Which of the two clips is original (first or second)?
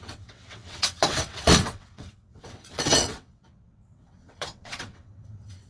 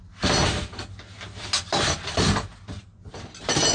second